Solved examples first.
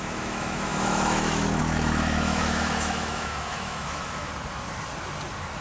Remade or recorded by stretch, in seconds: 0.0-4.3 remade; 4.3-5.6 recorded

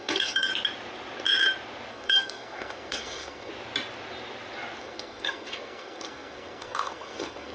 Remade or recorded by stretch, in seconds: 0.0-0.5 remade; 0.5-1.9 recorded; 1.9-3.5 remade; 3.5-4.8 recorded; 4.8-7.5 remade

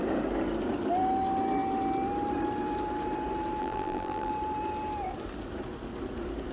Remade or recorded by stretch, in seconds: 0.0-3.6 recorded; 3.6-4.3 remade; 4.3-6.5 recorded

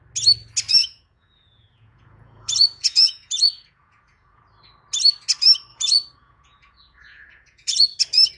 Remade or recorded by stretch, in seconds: 0.0-0.8 recorded; 0.8-4.4 remade; 4.4-5.7 recorded; 5.7-8.0 remade; 8.0-8.4 recorded

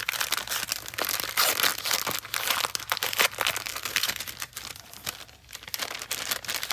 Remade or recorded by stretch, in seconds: 0.0-3.7 recorded; 3.7-4.2 remade; 4.2-6.7 recorded